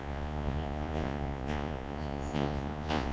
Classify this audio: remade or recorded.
remade